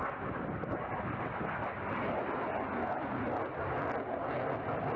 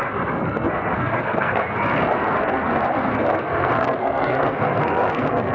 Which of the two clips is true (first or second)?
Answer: first